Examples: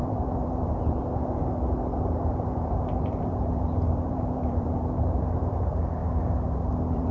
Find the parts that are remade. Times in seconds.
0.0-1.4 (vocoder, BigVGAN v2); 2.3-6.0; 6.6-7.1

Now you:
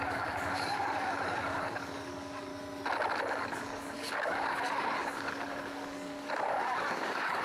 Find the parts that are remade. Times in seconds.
0.0-2.5 (codec, DAC); 3.3-7.4